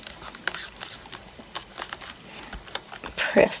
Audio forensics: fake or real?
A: real